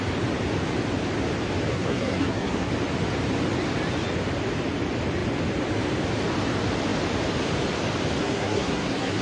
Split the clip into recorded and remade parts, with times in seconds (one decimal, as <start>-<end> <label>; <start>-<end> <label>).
0.0-1.7 recorded; 1.7-2.7 remade; 2.7-8.2 recorded; 8.2-9.2 remade